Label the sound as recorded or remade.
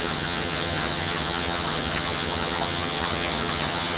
remade